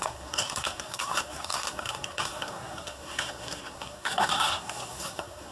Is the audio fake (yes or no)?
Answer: yes